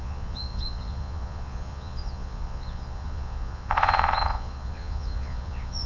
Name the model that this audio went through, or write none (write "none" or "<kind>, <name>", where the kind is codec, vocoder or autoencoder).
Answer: vocoder, Vocos